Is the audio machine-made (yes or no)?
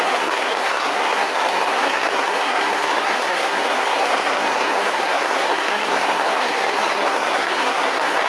yes